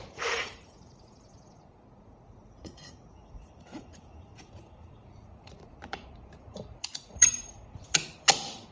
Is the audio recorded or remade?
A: remade